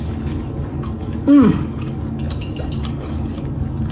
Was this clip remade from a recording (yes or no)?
yes